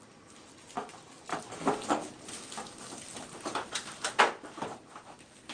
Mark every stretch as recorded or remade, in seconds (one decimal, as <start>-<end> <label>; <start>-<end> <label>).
0.0-5.5 recorded